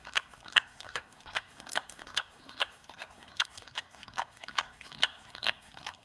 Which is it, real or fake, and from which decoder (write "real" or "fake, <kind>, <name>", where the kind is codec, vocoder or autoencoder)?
fake, codec, SNAC